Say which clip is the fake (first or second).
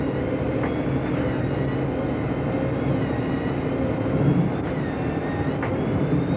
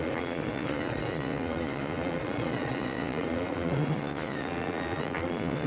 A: second